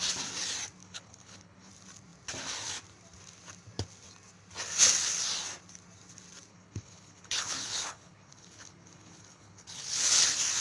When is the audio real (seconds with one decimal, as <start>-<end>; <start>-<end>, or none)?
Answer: 0.0-0.8; 1.7-6.5; 10.2-10.6